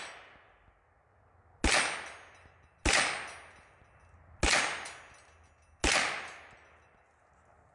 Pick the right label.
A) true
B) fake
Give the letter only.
A